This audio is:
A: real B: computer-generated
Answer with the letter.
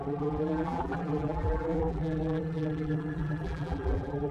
B